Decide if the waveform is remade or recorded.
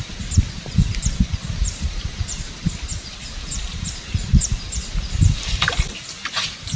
remade